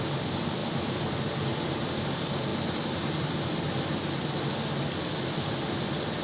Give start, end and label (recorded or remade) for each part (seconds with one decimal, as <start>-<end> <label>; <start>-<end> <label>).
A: 0.0-6.2 recorded